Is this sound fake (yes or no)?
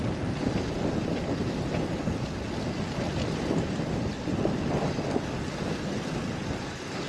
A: no